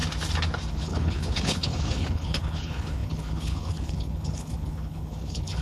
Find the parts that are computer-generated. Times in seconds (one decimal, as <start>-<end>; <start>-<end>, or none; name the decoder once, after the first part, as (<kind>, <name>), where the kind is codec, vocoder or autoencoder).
0.7-5.6 (codec, HILCodec)